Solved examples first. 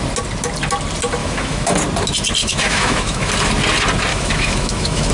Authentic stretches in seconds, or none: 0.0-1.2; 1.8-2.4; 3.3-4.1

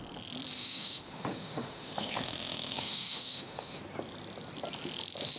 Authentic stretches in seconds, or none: 0.0-0.6; 3.8-5.4

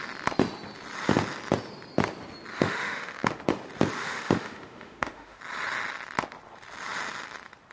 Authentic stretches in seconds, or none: 0.0-2.5; 3.4-4.0; 5.4-7.7

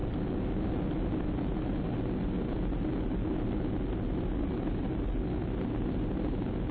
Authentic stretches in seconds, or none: 0.0-6.7

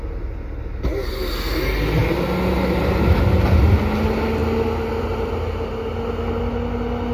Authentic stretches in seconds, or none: 0.0-7.1

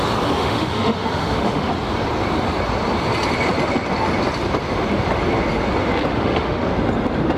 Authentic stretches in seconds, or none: 0.0-0.4; 1.7-6.1; 6.7-7.4

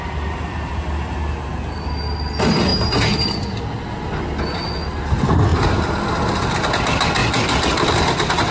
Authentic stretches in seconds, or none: 0.0-8.5

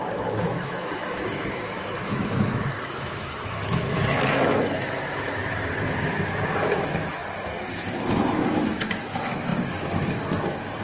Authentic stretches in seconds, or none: 7.2-7.7